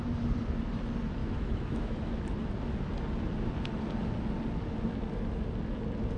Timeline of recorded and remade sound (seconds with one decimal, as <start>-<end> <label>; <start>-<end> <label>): 0.0-1.2 recorded; 1.2-2.1 remade; 2.1-6.2 recorded